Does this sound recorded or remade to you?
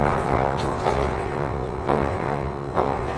remade